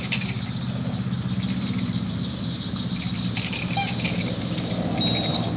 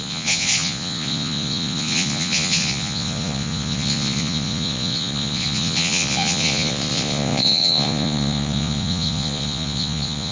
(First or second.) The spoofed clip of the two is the second